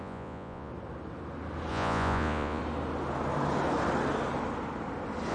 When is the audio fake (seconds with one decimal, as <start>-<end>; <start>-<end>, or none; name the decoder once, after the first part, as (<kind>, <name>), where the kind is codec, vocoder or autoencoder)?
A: 0.0-0.7 (vocoder, Vocos); 1.7-2.6